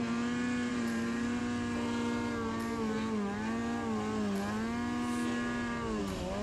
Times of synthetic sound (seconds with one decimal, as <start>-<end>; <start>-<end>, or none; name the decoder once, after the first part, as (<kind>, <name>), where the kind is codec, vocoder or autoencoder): 0.7-1.4 (vocoder, BigVGAN v2)